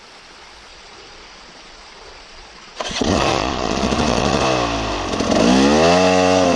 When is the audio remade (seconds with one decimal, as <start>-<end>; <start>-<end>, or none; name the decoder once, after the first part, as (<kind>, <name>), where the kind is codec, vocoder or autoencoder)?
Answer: 0.7-4.4 (vocoder, Vocos)